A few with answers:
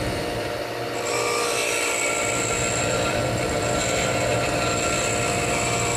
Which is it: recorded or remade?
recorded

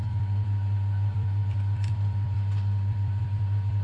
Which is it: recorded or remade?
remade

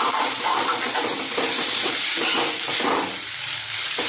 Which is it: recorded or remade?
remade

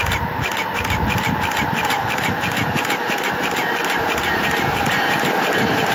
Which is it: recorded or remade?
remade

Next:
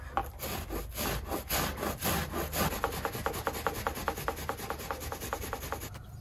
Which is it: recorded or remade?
recorded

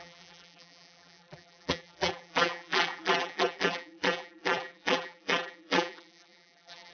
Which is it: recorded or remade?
remade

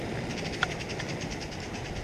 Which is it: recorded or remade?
recorded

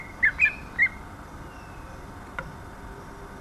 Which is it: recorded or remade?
recorded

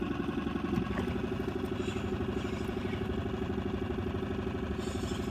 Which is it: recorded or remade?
recorded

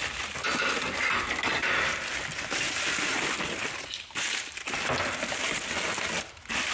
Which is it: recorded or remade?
remade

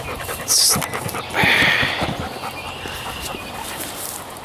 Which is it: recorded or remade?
recorded